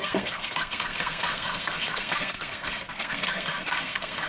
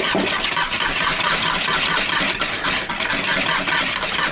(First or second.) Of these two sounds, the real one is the second